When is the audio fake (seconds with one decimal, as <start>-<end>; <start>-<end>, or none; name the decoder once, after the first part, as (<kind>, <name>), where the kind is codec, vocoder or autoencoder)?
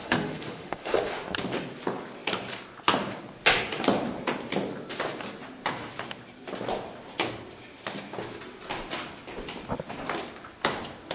0.0-1.1 (autoencoder, DAC-VAE)